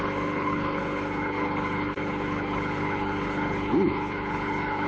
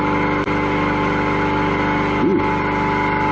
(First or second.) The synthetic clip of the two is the first